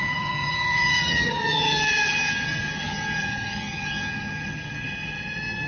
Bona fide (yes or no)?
no